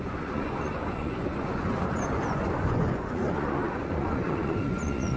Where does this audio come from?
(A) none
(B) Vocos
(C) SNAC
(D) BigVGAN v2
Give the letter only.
B